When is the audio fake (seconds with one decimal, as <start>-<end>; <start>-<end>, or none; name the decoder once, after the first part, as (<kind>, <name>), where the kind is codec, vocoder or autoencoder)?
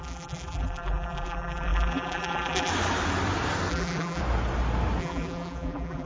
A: 0.0-2.7 (vocoder, BigVGAN v2); 3.7-4.2; 5.0-6.1